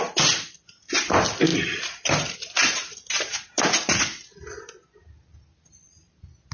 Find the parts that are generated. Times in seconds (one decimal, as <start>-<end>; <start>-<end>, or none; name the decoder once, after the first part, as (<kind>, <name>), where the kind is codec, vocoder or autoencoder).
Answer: none